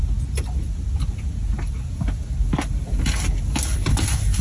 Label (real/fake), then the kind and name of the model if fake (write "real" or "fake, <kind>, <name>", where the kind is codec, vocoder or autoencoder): real